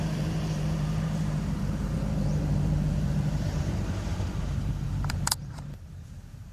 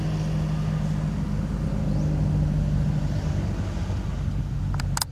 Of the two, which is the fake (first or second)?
first